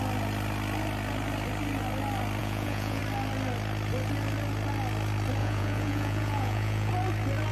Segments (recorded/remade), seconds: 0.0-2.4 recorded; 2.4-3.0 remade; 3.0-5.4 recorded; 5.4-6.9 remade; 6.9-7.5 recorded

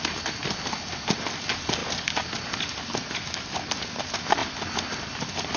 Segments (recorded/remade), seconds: 0.0-5.6 recorded

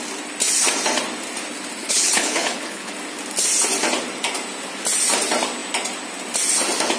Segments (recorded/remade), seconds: 0.0-1.8 recorded; 1.8-2.9 remade; 2.9-7.0 recorded

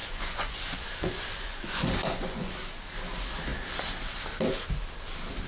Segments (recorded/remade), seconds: 0.0-2.5 remade; 2.5-5.5 recorded

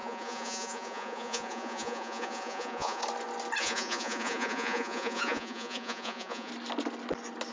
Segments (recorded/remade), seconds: 0.0-3.0 remade; 3.0-3.6 recorded; 3.6-6.5 remade; 6.5-7.5 recorded